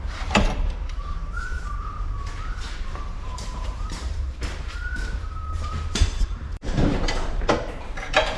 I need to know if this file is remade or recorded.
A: remade